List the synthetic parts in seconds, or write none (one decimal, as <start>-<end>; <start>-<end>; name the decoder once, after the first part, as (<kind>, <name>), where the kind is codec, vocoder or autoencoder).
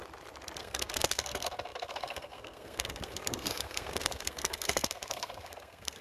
0.6-6.0 (codec, SNAC)